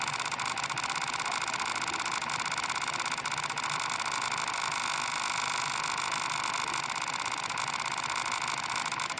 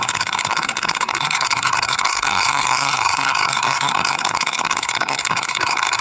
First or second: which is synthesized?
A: second